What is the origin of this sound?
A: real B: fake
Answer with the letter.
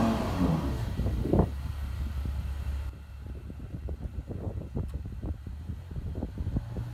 A